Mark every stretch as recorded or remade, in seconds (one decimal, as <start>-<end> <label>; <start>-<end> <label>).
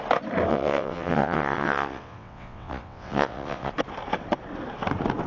0.0-0.5 recorded; 0.5-3.7 remade; 3.7-5.3 recorded